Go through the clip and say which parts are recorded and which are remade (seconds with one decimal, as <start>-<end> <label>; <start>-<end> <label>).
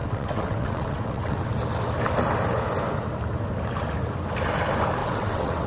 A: 0.0-1.5 remade; 1.5-5.0 recorded; 5.0-5.7 remade